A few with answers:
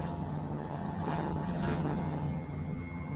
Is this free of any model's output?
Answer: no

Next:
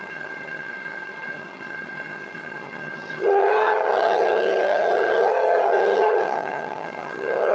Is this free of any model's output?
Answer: no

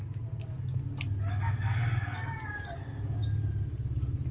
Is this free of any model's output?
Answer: yes